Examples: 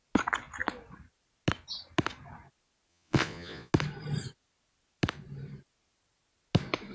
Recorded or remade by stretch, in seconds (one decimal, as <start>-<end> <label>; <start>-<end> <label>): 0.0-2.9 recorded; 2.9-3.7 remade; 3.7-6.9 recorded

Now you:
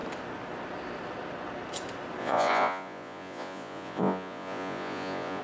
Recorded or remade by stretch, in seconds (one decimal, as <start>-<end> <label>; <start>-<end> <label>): 0.0-2.2 recorded; 2.2-5.4 remade

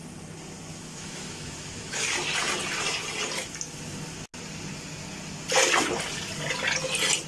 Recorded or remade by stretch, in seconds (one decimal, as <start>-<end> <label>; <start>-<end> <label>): 0.0-0.7 recorded; 0.7-2.0 remade; 2.0-7.3 recorded

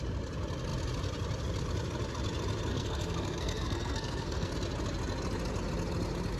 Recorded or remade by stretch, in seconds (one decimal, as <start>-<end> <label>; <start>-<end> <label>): 0.0-2.7 recorded; 2.7-4.5 remade; 4.5-6.4 recorded

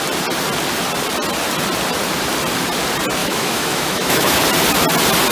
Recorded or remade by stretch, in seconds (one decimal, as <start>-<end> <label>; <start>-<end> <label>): 0.0-3.2 recorded; 3.2-4.4 remade; 4.4-5.3 recorded

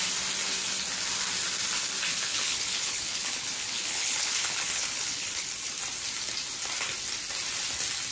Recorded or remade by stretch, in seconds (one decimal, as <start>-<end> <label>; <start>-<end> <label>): 0.0-2.1 recorded; 2.1-5.5 remade; 5.5-8.1 recorded